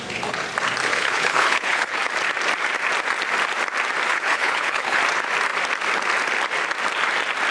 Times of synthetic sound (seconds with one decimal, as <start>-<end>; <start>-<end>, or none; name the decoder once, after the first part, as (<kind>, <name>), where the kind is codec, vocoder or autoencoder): 0.9-2.0 (codec, HILCodec); 4.1-5.0

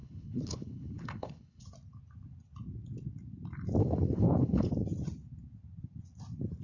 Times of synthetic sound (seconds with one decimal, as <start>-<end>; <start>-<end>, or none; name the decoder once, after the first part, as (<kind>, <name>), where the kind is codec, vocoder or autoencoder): 0.0-1.6 (codec, HILCodec); 3.8-4.7

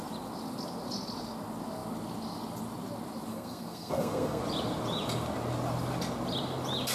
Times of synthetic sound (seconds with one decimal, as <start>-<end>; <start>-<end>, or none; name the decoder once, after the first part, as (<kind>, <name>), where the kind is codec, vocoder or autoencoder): 3.3-4.4 (codec, SNAC)

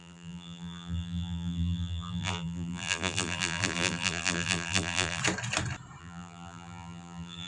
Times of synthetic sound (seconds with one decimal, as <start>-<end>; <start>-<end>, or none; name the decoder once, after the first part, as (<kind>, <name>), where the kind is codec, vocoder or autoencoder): 0.0-5.2 (vocoder, BigVGAN v2); 6.0-7.5

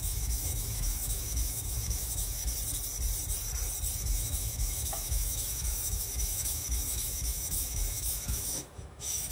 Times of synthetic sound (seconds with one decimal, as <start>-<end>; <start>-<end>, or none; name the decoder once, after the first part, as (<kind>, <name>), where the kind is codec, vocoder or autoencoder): 0.0-2.4 (autoencoder, DAC-VAE); 4.0-9.3